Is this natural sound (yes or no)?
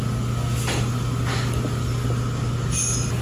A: yes